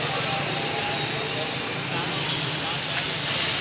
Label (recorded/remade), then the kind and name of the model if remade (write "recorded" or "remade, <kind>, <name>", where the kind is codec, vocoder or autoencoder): recorded